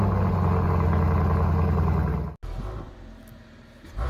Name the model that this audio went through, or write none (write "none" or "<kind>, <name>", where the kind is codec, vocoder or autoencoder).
none